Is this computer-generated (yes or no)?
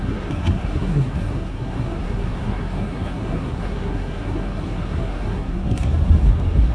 yes